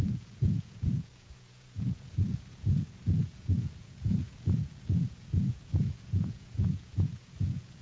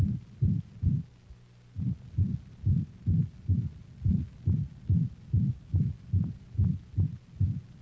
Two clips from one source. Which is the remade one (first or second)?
first